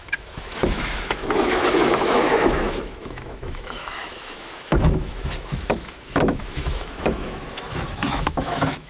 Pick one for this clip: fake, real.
fake